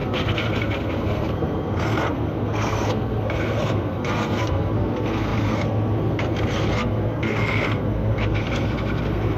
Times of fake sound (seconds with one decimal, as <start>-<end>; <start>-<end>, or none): 0.0-9.4